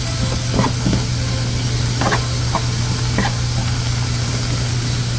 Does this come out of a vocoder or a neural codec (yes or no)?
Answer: no